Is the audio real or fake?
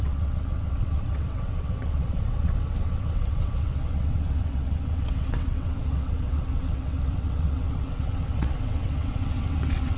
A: fake